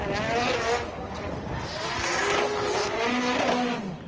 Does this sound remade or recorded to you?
recorded